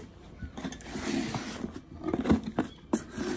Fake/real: real